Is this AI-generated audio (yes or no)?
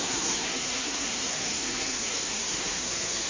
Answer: yes